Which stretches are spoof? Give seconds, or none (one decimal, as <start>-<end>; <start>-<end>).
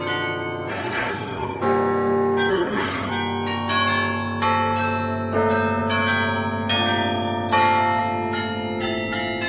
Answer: 0.7-1.6; 2.5-3.1